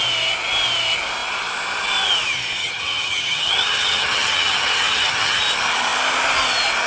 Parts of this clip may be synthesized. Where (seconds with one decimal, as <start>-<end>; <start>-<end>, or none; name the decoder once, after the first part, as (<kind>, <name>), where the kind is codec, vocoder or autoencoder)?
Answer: 2.6-5.4 (vocoder, HiFi-GAN)

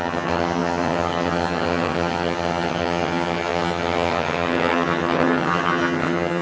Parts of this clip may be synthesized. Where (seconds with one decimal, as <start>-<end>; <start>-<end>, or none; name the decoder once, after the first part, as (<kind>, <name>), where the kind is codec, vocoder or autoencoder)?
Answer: 0.0-6.4 (vocoder, HiFi-GAN)

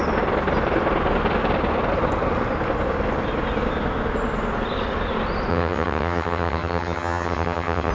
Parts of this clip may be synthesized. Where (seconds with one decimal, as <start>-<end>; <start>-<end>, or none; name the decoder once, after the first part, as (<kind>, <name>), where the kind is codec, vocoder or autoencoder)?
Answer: 5.5-7.9 (vocoder, HiFi-GAN)

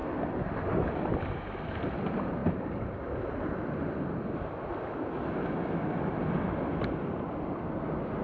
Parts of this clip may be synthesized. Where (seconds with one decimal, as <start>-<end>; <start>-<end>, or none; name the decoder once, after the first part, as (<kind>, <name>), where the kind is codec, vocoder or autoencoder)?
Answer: none

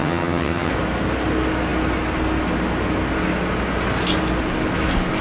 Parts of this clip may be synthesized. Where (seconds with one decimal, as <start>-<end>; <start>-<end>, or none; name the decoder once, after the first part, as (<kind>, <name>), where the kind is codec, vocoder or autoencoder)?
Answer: 0.0-0.7 (vocoder, HiFi-GAN)

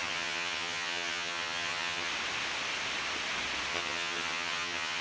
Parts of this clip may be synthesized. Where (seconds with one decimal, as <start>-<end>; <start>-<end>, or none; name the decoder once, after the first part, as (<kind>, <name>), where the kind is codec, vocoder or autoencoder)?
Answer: 0.0-2.1 (vocoder, HiFi-GAN); 3.7-5.0

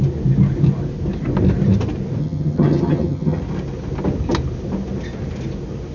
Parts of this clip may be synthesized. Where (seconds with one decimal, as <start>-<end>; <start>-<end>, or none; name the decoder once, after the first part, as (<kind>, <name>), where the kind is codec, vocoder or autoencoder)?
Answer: 2.2-3.4 (vocoder, HiFi-GAN)

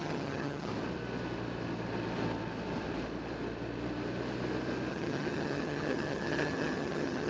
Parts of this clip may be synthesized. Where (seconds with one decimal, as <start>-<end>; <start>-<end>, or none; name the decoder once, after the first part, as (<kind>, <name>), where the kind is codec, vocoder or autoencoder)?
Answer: 0.0-0.7 (vocoder, HiFi-GAN); 4.9-7.3